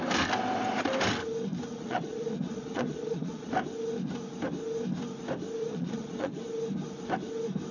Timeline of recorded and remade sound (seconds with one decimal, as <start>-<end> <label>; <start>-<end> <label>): 0.0-1.7 recorded; 1.7-3.5 remade; 3.5-5.6 recorded; 5.6-6.3 remade; 6.3-7.7 recorded